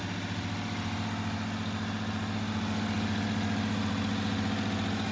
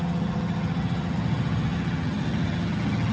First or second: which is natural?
first